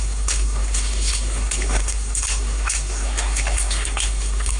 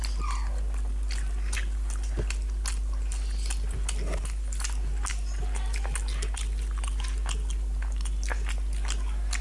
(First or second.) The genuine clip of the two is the second